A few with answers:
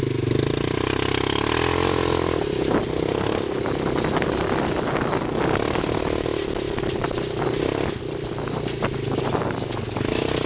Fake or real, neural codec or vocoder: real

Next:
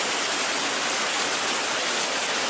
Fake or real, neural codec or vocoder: real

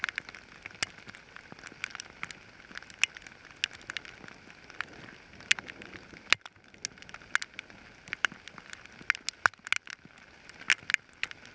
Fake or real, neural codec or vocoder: real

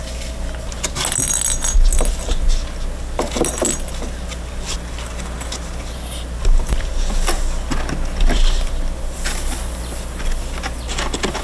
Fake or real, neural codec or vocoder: real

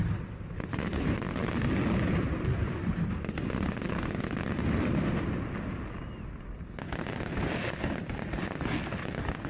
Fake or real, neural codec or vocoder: real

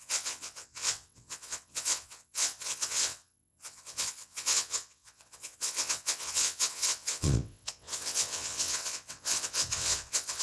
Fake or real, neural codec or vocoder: fake, vocoder, WaveNeXt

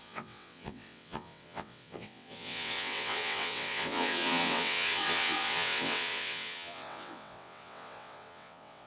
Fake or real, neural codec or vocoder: fake, vocoder, WaveNeXt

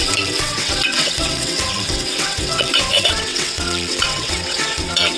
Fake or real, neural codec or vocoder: fake, vocoder, WaveNeXt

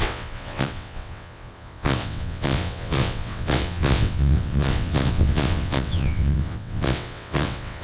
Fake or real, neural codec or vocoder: fake, vocoder, WaveNeXt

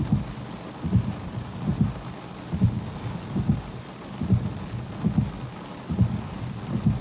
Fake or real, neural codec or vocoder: real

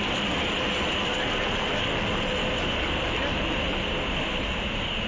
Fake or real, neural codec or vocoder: real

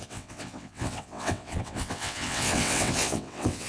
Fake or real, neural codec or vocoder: fake, vocoder, WaveNeXt